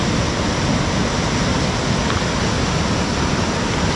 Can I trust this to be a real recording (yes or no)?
yes